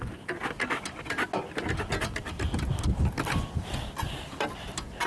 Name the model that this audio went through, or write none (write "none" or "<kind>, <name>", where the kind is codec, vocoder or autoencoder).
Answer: none